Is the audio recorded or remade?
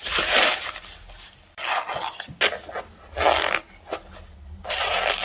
recorded